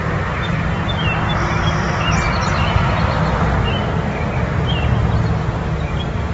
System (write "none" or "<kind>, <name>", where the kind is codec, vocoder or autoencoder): none